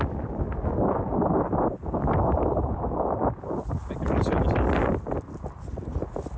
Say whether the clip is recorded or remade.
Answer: recorded